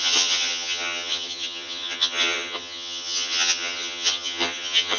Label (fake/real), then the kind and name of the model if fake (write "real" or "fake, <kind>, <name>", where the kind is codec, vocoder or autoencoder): fake, vocoder, HiFi-GAN